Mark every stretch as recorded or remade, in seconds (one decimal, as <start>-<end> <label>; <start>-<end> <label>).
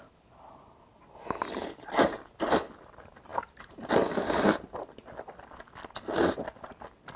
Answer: 0.0-7.2 recorded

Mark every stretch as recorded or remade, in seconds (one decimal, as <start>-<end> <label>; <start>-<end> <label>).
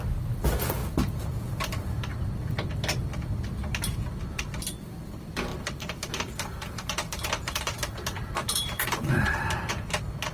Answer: 0.0-5.5 recorded; 5.5-9.7 remade; 9.7-10.3 recorded